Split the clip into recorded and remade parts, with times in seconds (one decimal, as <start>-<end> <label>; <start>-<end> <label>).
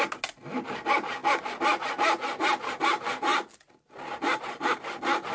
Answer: 0.0-5.3 recorded